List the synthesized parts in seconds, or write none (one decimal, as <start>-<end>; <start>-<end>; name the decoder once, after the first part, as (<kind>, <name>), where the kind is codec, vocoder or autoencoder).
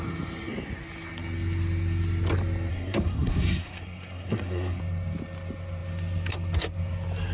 2.7-4.8 (codec, SNAC)